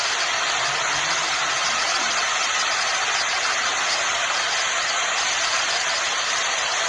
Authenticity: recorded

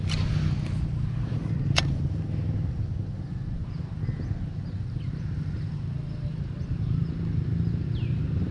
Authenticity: recorded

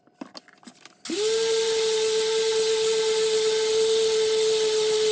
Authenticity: recorded